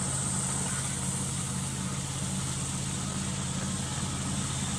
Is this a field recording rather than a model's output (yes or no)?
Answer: yes